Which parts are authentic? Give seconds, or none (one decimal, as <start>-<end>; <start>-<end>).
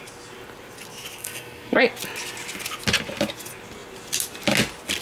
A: 0.0-1.2; 1.8-5.0